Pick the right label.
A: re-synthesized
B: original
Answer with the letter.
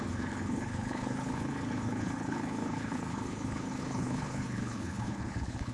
A